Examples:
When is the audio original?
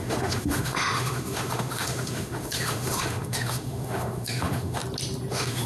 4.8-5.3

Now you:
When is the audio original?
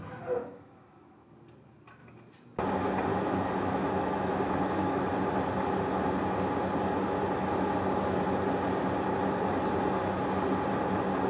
0.0-0.4; 1.3-3.1; 5.0-11.3